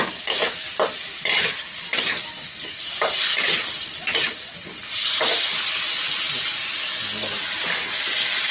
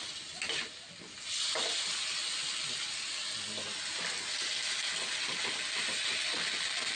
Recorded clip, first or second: second